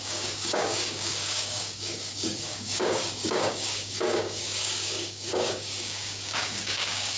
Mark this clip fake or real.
fake